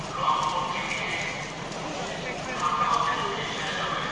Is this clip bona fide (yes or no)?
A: yes